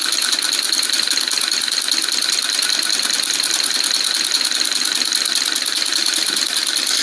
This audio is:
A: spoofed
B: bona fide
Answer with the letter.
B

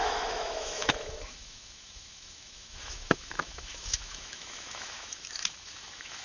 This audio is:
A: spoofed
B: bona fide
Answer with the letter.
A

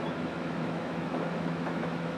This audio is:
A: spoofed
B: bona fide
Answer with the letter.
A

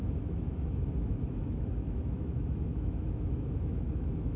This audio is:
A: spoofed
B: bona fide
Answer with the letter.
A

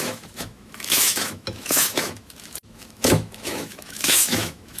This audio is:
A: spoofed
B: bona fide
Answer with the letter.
A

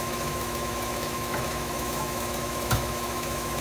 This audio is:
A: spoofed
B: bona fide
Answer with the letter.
A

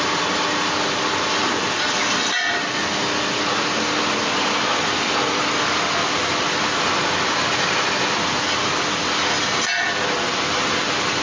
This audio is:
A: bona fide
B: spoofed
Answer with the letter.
A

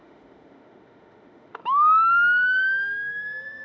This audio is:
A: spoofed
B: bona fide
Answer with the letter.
A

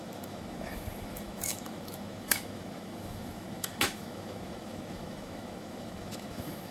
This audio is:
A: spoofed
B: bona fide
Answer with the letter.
A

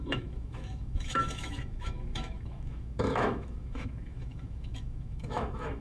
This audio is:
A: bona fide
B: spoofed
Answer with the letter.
B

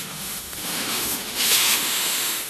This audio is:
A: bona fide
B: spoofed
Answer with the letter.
B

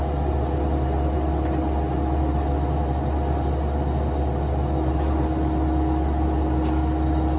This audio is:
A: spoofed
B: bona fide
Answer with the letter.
B